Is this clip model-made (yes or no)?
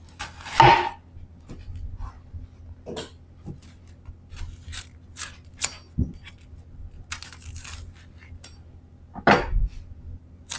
no